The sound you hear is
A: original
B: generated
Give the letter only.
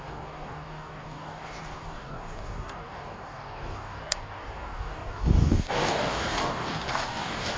B